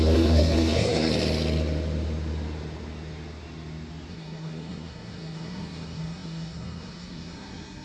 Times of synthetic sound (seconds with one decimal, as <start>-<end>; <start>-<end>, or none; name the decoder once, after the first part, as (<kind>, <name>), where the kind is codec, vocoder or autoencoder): 0.0-1.1 (codec, SNAC); 4.1-7.8